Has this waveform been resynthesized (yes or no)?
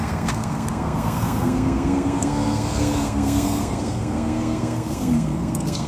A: yes